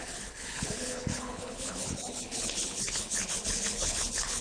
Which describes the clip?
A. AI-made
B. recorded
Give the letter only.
A